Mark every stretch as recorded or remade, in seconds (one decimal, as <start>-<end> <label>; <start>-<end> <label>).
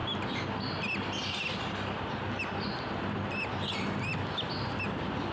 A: 0.0-5.3 recorded